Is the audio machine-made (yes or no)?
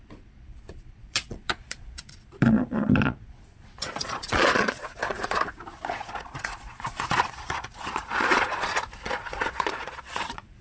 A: yes